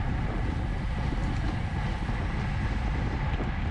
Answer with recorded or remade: recorded